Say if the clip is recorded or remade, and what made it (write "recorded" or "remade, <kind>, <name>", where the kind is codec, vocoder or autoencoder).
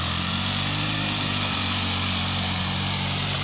remade, vocoder, BigVGAN v2